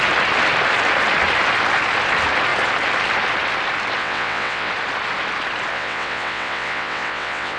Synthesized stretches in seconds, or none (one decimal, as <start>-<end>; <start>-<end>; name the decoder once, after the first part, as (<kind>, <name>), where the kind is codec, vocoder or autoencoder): 4.0-4.7 (vocoder, WaveNeXt); 5.7-7.6